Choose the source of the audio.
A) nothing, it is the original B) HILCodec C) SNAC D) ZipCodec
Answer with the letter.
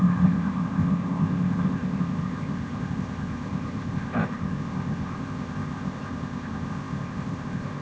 D